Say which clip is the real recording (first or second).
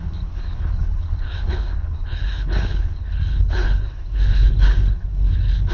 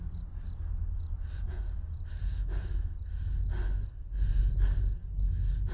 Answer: second